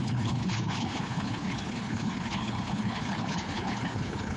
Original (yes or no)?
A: no